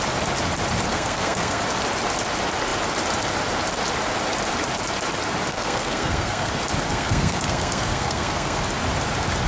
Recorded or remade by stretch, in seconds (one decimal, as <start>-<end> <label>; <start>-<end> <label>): 0.0-0.9 recorded; 0.9-1.6 remade; 1.6-5.5 recorded; 5.5-6.5 remade; 6.5-6.9 recorded; 6.9-8.6 remade; 8.6-9.5 recorded